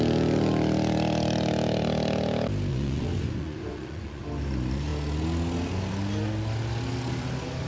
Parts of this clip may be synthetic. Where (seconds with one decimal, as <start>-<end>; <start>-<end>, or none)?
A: 2.7-4.2